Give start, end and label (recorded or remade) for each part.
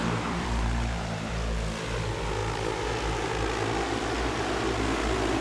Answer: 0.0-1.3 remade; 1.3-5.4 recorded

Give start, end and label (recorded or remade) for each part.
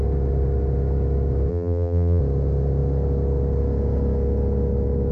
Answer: 0.0-1.5 recorded; 1.5-2.2 remade; 2.2-5.1 recorded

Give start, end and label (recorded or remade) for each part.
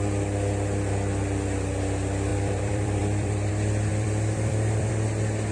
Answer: 0.0-2.3 recorded; 2.3-3.5 remade; 3.5-3.9 recorded; 3.9-4.9 remade; 4.9-5.5 recorded